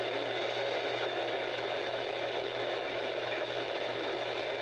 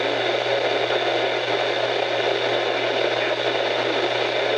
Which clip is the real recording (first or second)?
second